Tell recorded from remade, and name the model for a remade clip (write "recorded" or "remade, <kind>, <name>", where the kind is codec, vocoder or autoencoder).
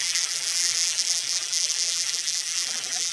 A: remade, vocoder, BigVGAN v2